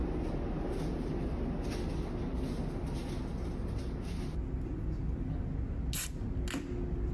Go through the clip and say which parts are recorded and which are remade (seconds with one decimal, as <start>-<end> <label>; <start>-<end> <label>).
0.0-7.1 recorded